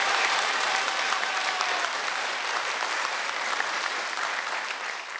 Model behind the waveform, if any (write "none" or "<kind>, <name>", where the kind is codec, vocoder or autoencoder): vocoder, BigVGAN v2